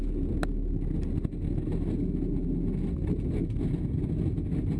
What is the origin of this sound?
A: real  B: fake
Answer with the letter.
A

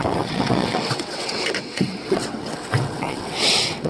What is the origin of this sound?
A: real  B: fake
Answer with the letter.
B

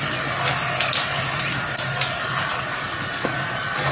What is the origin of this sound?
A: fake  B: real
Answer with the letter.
B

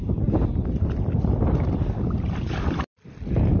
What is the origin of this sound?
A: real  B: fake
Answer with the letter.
A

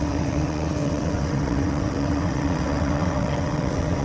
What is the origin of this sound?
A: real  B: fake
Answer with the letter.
B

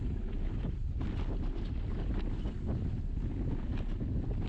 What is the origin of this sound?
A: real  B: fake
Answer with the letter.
A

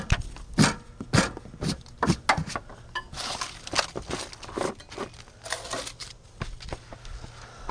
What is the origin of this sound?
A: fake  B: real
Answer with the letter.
B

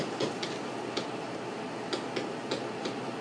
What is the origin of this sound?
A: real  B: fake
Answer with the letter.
A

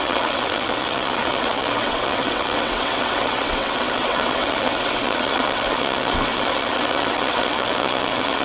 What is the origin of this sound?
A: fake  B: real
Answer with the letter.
A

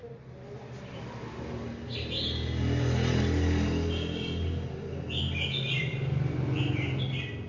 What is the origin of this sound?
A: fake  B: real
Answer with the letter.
B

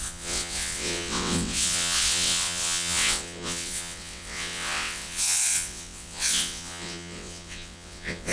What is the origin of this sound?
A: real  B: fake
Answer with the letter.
B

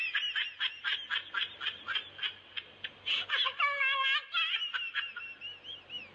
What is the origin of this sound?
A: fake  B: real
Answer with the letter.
B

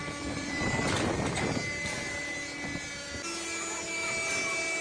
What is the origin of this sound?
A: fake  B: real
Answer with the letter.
B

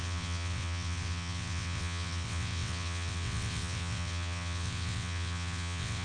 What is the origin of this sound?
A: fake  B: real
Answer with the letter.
A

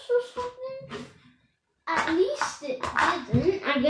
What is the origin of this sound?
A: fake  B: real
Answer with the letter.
B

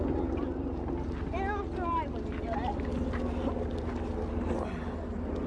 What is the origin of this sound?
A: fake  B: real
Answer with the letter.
B